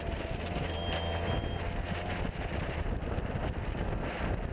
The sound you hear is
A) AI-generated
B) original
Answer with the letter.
B